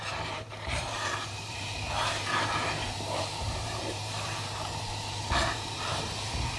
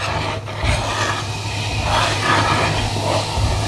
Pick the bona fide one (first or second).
second